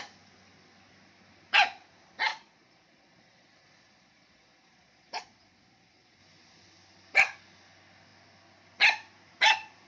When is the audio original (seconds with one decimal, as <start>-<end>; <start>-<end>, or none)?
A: 0.0-2.3; 6.2-9.9